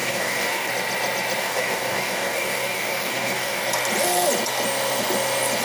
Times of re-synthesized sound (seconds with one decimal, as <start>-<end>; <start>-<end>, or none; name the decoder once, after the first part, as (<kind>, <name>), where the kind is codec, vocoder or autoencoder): 0.0-0.7 (codec, DAC); 1.4-3.6